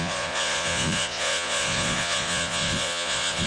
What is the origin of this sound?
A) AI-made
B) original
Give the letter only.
A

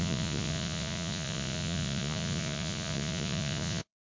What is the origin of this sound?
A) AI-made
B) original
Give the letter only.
A